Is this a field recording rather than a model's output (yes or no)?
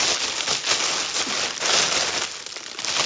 yes